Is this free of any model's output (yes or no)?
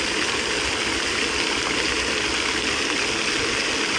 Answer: yes